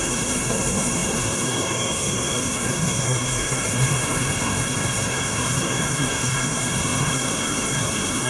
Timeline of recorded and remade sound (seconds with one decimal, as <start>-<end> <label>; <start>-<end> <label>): 0.0-8.3 remade